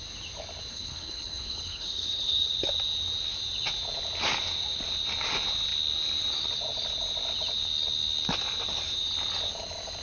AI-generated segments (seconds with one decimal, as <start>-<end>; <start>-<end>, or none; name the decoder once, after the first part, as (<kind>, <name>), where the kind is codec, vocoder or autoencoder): 0.7-2.5 (codec, HILCodec)